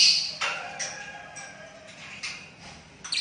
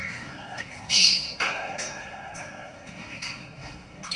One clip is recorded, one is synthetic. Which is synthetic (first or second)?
second